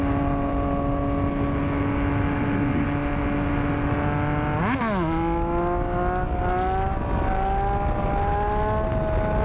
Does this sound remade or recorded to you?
recorded